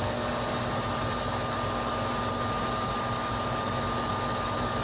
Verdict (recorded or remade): recorded